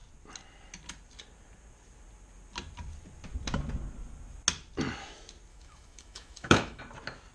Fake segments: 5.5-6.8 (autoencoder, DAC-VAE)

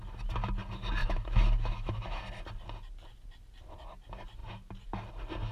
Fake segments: 1.0-2.2 (autoencoder, DAC-VAE)

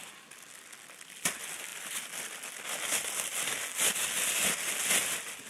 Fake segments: none

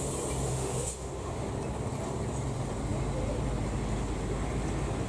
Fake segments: 0.5-1.5 (autoencoder, DAC-VAE)

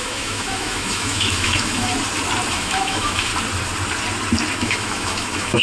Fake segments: 0.0-1.9 (autoencoder, DAC-VAE); 2.5-3.3; 4.5-5.6